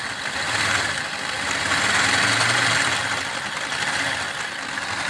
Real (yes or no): yes